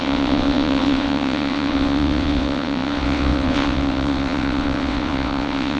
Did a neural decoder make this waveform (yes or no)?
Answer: yes